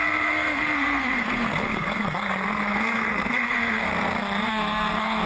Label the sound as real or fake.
fake